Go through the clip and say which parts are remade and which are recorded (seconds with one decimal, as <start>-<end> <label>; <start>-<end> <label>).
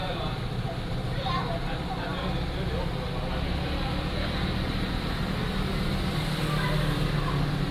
0.0-5.7 recorded; 5.7-6.2 remade; 6.2-7.7 recorded